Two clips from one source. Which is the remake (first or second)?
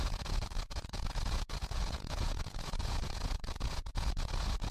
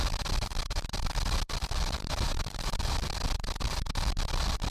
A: first